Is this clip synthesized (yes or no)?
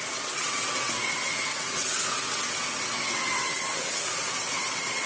yes